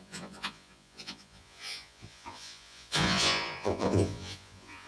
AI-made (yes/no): yes